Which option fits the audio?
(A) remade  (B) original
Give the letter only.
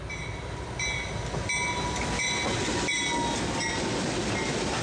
B